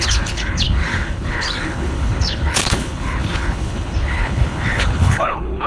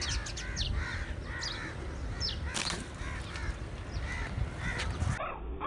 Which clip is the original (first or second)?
second